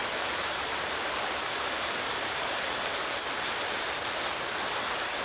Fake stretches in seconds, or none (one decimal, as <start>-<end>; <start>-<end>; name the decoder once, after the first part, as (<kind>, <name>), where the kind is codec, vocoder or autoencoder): 0.0-3.1 (vocoder, BigVGAN v2)